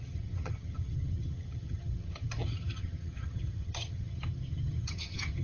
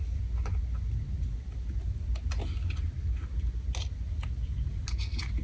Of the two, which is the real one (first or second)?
second